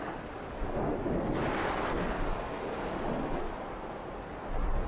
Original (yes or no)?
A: yes